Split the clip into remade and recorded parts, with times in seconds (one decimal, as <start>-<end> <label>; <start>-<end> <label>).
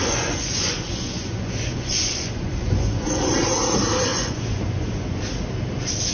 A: 0.0-3.3 remade; 3.3-4.1 recorded; 4.1-5.2 remade; 5.2-6.1 recorded